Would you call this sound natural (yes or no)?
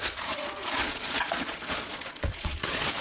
no